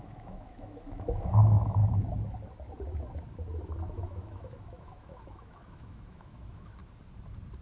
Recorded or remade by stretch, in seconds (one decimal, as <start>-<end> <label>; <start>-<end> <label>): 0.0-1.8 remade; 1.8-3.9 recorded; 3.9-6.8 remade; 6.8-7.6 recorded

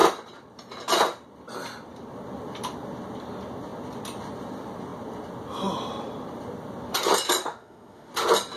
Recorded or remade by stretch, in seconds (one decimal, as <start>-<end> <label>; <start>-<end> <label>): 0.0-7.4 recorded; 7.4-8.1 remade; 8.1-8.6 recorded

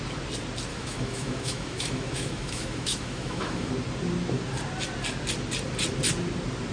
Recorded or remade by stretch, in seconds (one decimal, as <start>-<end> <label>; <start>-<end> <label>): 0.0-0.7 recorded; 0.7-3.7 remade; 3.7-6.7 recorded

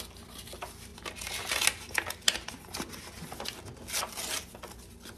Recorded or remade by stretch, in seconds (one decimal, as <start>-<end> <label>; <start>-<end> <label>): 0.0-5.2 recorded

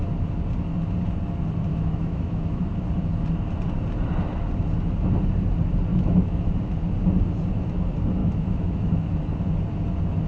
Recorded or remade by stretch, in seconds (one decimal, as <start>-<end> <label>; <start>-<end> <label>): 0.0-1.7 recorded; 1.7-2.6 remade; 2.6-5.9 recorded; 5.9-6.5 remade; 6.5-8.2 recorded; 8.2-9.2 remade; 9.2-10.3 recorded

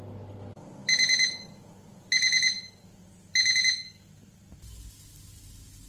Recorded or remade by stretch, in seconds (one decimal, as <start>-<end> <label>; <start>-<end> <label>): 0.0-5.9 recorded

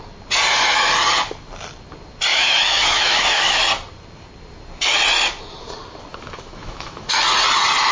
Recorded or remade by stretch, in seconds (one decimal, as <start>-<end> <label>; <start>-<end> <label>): 0.0-2.3 recorded; 2.3-3.6 remade; 3.6-6.1 recorded; 6.1-7.2 remade; 7.2-7.9 recorded

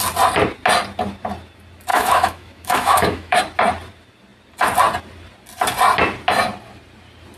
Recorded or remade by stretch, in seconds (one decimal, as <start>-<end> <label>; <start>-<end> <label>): 0.0-1.9 recorded; 1.9-3.4 remade; 3.4-7.4 recorded